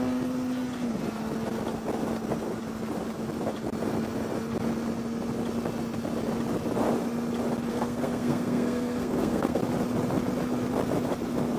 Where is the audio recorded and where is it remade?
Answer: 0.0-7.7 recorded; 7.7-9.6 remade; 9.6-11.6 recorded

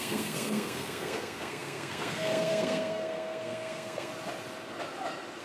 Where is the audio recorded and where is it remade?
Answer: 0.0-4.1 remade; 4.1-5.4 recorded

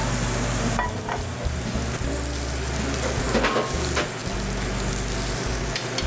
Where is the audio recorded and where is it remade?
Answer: 0.0-6.1 recorded